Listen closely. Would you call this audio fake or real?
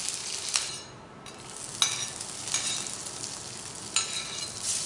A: real